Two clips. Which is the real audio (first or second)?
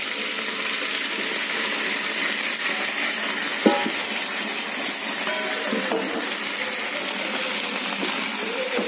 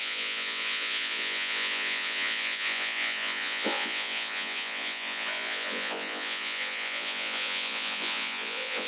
first